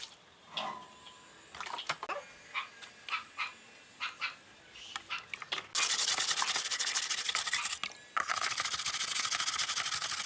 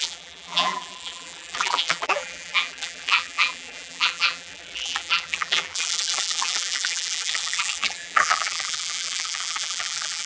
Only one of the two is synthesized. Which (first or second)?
second